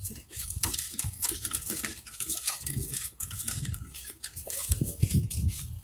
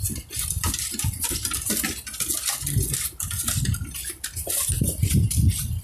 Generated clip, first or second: first